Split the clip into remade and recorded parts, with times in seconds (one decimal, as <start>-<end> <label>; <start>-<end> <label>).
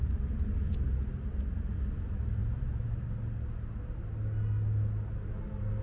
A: 0.0-5.8 recorded